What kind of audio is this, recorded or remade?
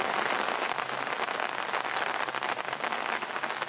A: recorded